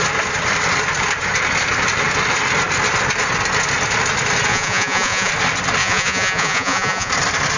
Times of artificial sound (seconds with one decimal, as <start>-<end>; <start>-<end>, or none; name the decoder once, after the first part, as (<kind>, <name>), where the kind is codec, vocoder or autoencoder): 4.5-5.3 (vocoder, Vocos); 5.8-7.1